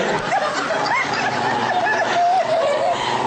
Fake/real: real